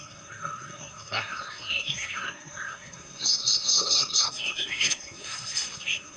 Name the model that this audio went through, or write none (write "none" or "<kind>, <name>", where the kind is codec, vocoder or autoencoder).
codec, SNAC